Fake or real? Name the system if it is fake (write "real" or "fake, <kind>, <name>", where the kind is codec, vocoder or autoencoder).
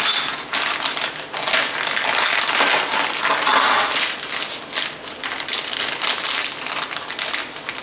real